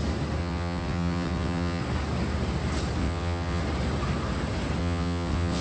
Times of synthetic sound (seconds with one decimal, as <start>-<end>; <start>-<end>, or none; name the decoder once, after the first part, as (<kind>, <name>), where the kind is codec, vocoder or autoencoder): 0.4-1.8 (vocoder, WaveNeXt); 3.0-3.6; 4.8-5.6